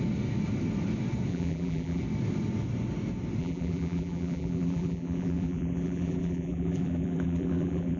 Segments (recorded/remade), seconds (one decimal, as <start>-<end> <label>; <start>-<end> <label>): 0.0-1.3 recorded; 1.3-2.0 remade; 2.0-3.4 recorded; 3.4-8.0 remade

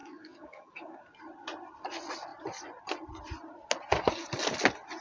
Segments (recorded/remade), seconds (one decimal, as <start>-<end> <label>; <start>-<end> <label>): 0.0-1.0 remade; 1.0-5.0 recorded